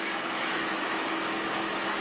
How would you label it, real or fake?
fake